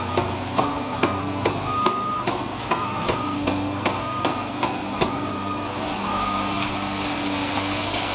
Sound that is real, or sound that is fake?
fake